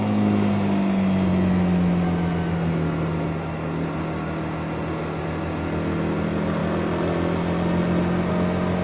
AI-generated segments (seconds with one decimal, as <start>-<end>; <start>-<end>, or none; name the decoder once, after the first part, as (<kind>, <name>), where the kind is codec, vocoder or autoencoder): none